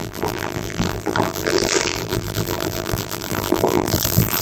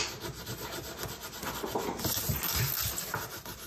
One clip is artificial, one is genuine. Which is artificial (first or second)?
first